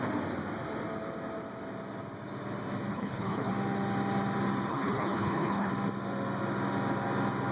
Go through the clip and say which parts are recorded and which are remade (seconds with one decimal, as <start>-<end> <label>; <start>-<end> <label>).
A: 0.0-2.9 recorded; 2.9-3.5 remade; 3.5-4.7 recorded; 4.7-5.7 remade; 5.7-7.5 recorded